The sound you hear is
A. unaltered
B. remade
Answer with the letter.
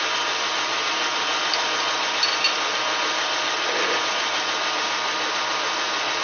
A